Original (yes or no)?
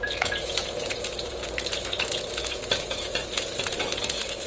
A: no